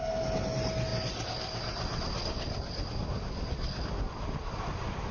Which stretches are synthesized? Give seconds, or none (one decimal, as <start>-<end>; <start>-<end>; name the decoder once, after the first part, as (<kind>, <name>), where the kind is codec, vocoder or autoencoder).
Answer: none